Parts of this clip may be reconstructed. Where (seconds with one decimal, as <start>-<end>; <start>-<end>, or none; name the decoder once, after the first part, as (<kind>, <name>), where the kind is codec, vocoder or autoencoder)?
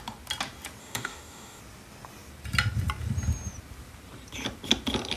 0.8-1.6 (codec, DAC)